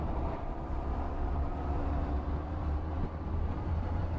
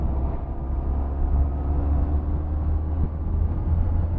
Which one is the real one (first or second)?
second